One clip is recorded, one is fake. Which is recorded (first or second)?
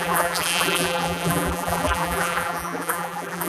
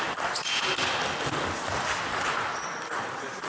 second